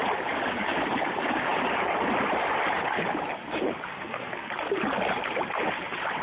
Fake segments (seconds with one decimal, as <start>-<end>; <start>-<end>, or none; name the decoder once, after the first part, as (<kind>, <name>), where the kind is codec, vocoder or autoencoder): 3.9-4.5 (codec, SNAC)